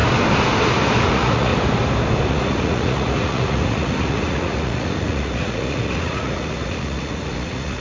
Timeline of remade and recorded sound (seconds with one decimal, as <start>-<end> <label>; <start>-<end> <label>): 0.0-1.1 recorded; 1.1-1.5 remade; 1.5-2.3 recorded; 2.3-7.8 remade